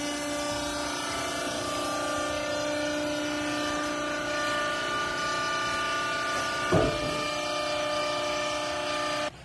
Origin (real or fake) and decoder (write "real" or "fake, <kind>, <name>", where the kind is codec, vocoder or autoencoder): real